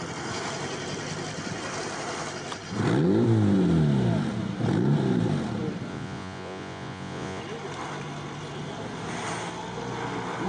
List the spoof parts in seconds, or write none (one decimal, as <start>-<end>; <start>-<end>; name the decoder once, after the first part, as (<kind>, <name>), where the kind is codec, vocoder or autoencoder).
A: 5.9-7.4 (vocoder, Vocos)